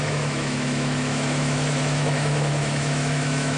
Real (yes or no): no